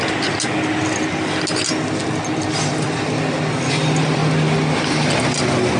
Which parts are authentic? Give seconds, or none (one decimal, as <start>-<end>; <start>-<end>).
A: 0.0-5.8

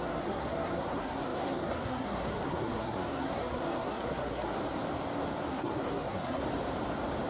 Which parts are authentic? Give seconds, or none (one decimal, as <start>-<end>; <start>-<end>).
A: 4.6-5.5; 6.4-7.3

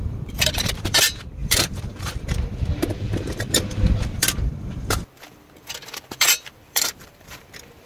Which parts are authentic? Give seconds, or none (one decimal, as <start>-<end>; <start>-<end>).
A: none

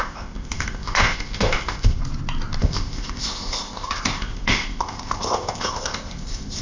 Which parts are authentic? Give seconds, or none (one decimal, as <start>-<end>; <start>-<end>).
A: 2.0-2.6